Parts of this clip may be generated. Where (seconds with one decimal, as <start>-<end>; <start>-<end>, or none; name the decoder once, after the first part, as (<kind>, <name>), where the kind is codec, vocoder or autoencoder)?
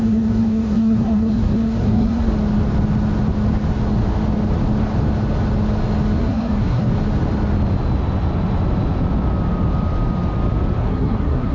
0.0-2.3 (codec, SNAC); 6.2-6.9; 10.8-11.5